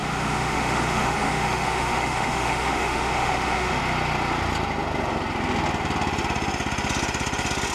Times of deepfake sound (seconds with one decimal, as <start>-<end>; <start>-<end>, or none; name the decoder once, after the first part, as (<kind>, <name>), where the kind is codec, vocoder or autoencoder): 0.0-3.8 (autoencoder, DAC-VAE)